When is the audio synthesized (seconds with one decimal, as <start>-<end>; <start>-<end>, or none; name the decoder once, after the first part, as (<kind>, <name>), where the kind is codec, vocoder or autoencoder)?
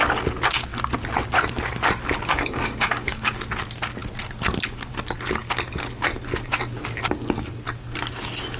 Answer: 2.3-3.4 (codec, DAC)